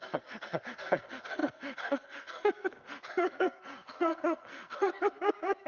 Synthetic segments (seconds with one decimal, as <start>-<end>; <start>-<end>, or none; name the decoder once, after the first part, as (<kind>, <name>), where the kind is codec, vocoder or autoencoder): 0.0-5.7 (codec, SNAC)